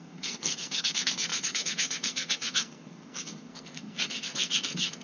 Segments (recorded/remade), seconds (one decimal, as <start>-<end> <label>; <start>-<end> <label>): 0.0-5.0 remade

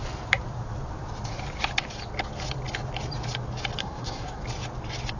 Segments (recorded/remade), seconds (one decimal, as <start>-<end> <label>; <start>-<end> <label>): 0.0-3.8 recorded; 3.8-4.4 remade; 4.4-5.2 recorded

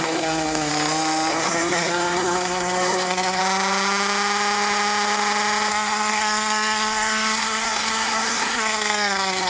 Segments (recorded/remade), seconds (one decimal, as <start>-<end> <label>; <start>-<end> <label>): 0.0-0.7 remade; 0.7-1.3 recorded; 1.3-3.4 remade; 3.4-5.7 recorded; 5.7-9.5 remade

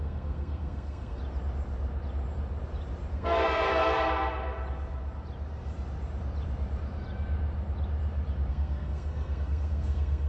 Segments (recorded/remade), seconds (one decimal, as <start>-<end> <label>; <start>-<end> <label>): 0.0-1.2 remade; 1.2-3.1 recorded; 3.1-3.8 remade; 3.8-8.5 recorded; 8.5-10.3 remade